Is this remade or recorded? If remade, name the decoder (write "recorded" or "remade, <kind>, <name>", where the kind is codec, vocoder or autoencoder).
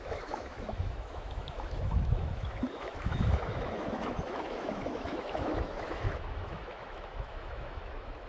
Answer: remade, autoencoder, DAC-VAE